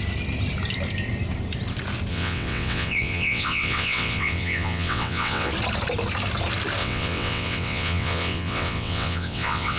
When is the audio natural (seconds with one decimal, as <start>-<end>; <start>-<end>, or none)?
0.0-2.1; 5.5-6.8